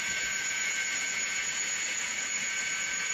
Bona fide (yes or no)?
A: no